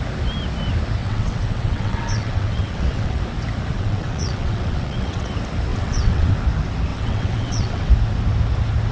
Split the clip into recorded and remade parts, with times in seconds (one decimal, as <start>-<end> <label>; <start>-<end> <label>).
0.0-1.0 recorded; 1.0-3.2 remade; 3.2-3.7 recorded; 3.7-5.3 remade; 5.3-5.7 recorded; 5.7-6.3 remade; 6.3-6.9 recorded; 6.9-7.9 remade; 7.9-8.9 recorded